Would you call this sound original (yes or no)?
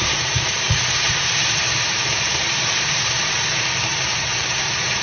no